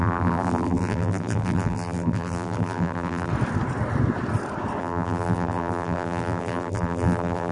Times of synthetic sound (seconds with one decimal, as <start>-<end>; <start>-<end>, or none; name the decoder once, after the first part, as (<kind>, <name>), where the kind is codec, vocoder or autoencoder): 0.0-3.3 (vocoder, BigVGAN v2); 4.8-7.5